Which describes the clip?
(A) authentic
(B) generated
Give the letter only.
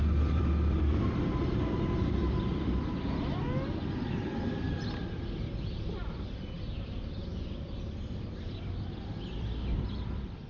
B